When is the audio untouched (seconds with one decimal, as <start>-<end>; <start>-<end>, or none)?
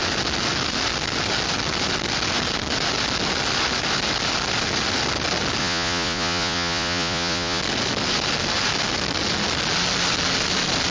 0.0-5.6; 7.6-10.9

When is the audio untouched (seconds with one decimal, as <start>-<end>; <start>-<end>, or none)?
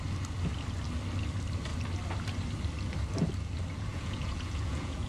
0.0-3.9